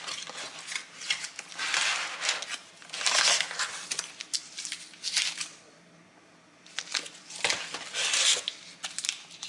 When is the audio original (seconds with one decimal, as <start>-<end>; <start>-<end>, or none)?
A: 0.0-9.5